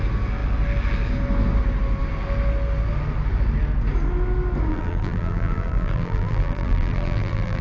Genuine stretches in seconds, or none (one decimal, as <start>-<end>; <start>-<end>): 0.0-4.7